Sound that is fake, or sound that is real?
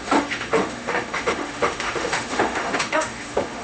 fake